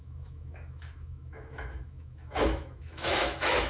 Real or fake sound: fake